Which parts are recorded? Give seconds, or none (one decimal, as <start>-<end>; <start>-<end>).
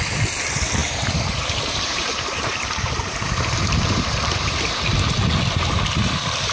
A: 0.0-0.8; 4.7-6.5